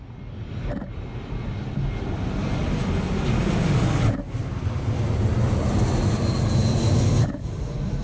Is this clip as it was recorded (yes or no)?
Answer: yes